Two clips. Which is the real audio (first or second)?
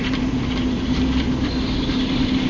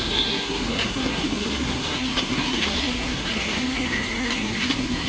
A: first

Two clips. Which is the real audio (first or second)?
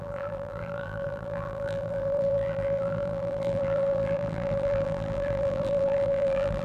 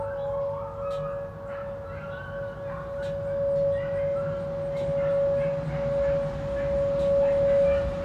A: second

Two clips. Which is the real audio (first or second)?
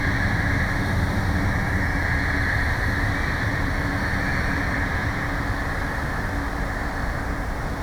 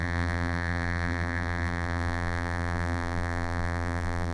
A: first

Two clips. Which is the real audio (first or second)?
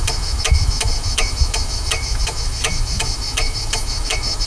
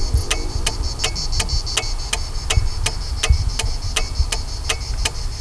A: second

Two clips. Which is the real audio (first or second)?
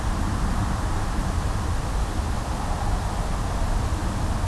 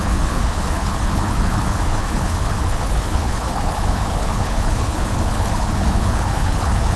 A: first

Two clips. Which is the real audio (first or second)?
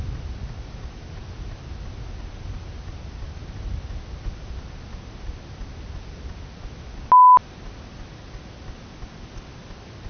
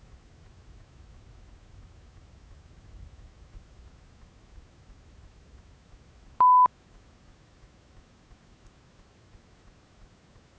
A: first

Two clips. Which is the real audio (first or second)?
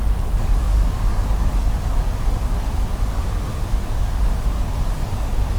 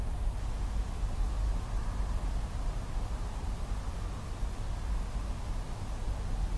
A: second